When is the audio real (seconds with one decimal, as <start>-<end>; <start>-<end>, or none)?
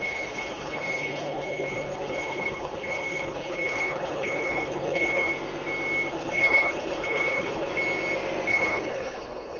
5.3-6.1; 7.7-8.5